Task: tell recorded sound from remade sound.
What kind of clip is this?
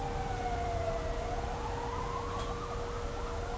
recorded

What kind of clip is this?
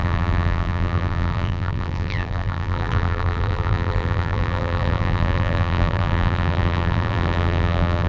remade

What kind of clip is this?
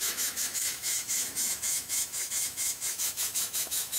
remade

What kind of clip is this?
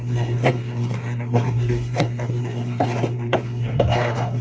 remade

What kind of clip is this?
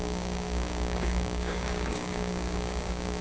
remade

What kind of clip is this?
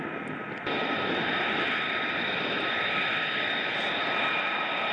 recorded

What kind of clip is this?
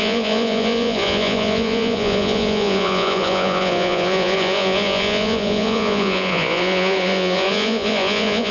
remade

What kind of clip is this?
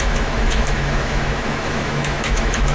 remade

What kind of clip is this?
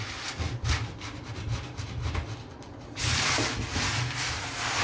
recorded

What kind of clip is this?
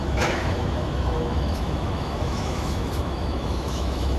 remade